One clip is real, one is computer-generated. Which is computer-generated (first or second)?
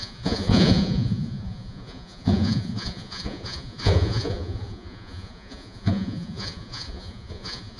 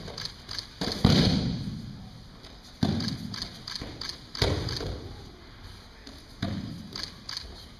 first